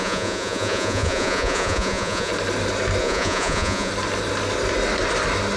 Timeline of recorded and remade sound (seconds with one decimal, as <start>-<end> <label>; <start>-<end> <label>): 0.0-2.3 remade; 2.3-3.0 recorded; 3.0-3.9 remade; 3.9-5.6 recorded